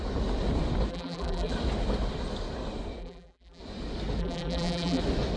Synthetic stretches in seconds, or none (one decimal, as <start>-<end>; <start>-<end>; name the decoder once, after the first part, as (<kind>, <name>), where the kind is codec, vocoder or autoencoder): 0.9-1.5 (vocoder, BigVGAN v2); 3.0-3.6; 4.2-5.0